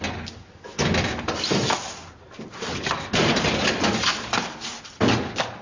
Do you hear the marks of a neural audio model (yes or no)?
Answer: no